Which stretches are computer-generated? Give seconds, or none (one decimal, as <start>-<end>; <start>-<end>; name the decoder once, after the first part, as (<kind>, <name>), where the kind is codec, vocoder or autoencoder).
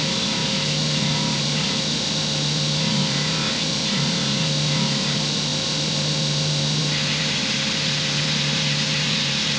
none